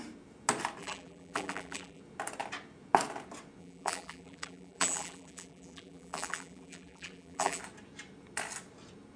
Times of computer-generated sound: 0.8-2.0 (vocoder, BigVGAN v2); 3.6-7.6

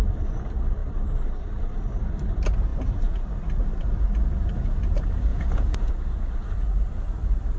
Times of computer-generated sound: 5.3-5.9 (vocoder, Vocos)

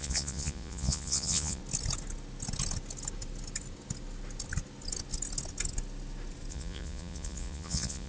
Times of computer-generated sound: 0.0-1.6 (vocoder, Vocos); 6.5-8.1

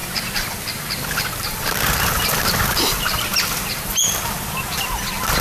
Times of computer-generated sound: none

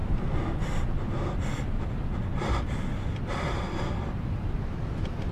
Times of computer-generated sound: none

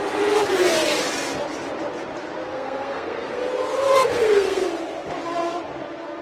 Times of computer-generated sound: 2.4-3.4 (codec, SNAC); 4.0-4.7

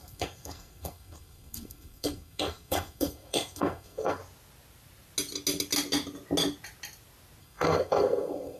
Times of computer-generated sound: 0.0-4.2 (codec, SNAC); 7.4-8.6

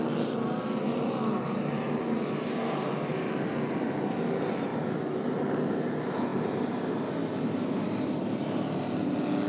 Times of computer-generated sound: 1.3-3.3 (vocoder, BigVGAN v2); 4.7-5.3; 6.3-9.1